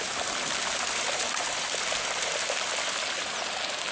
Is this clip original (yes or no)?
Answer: yes